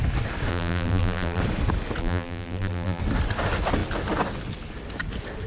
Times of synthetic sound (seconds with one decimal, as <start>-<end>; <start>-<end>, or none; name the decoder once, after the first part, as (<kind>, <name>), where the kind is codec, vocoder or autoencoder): 0.5-1.4 (vocoder, BigVGAN v2); 2.0-3.0